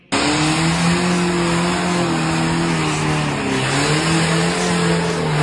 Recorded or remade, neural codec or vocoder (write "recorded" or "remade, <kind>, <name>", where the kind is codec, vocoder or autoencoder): recorded